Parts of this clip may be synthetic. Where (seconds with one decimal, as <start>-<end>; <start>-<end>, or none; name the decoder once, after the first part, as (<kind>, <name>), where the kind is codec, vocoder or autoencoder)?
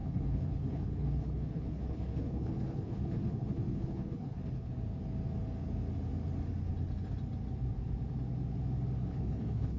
0.0-4.7 (codec, HILCodec); 9.1-9.8